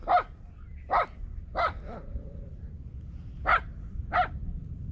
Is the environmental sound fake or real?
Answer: real